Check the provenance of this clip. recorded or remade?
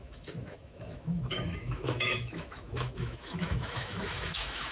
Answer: remade